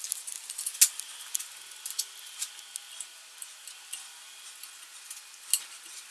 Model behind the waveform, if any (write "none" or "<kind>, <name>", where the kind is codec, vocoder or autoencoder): none